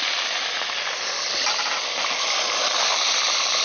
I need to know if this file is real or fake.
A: real